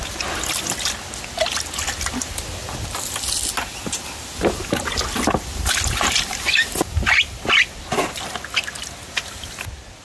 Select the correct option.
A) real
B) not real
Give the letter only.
A